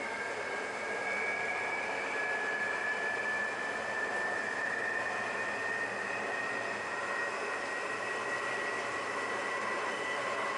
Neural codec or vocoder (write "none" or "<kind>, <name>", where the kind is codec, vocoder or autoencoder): none